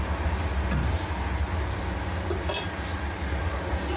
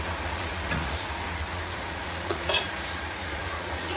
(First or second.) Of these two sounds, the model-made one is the second